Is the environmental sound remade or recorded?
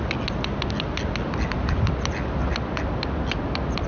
recorded